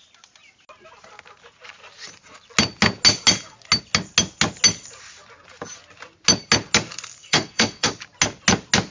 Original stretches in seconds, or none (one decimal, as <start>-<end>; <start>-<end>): 0.0-7.2; 7.9-8.9